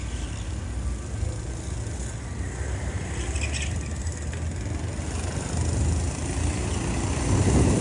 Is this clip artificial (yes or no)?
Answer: no